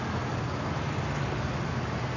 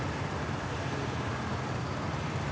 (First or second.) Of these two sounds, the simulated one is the second